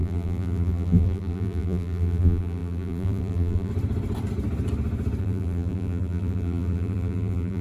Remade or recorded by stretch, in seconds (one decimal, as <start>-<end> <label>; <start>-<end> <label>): 0.0-3.7 remade; 3.7-5.2 recorded; 5.2-7.6 remade